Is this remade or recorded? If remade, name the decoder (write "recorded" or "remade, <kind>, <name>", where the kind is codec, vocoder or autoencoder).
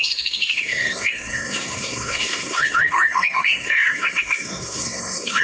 remade, codec, SNAC